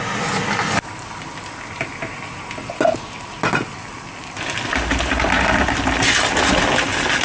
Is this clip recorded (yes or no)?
yes